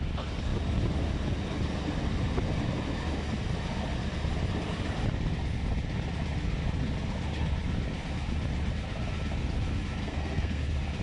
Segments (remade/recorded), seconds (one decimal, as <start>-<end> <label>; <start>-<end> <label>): 0.0-10.0 recorded; 10.0-10.6 remade; 10.6-11.0 recorded